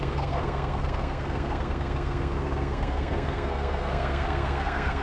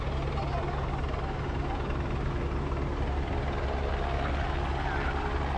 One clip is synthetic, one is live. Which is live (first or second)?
second